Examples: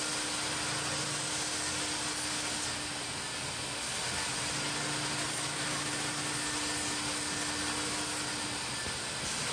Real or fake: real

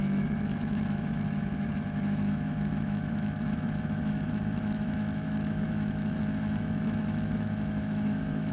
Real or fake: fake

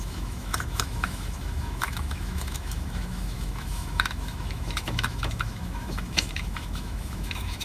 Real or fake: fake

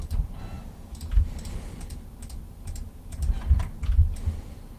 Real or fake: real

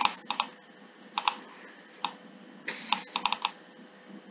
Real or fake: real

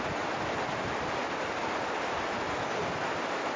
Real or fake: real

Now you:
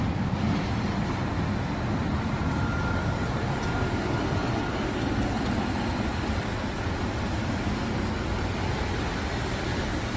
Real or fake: real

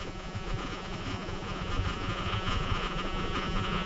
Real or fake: fake